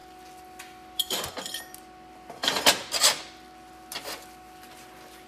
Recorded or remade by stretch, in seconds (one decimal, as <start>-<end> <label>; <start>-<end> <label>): 0.0-5.3 recorded